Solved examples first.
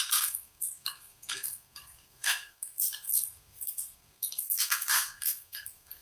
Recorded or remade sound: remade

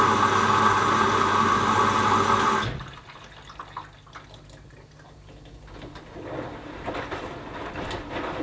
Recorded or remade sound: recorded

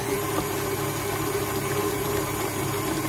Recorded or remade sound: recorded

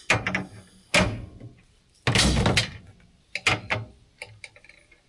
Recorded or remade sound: recorded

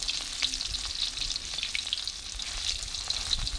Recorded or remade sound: recorded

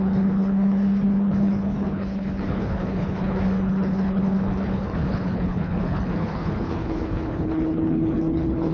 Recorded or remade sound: remade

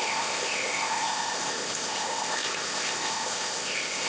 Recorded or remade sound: remade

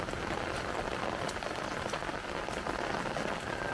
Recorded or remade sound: recorded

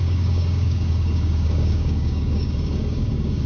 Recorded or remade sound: remade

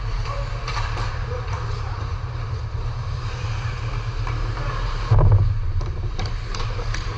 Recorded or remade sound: remade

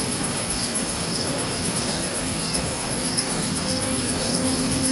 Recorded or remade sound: remade